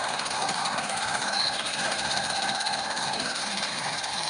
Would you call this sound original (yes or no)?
no